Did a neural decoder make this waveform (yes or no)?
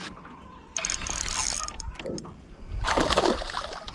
yes